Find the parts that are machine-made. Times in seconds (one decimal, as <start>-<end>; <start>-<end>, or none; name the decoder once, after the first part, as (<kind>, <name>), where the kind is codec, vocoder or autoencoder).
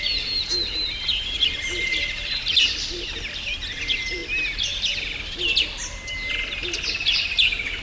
0.0-0.4 (vocoder, BigVGAN v2); 1.0-4.2